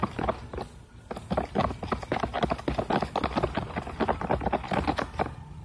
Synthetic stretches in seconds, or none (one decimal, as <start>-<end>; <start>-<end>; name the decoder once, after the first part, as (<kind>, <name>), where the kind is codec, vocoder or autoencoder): none